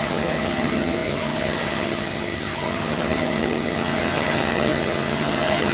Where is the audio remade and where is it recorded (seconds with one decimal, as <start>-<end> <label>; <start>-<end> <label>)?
0.0-5.7 remade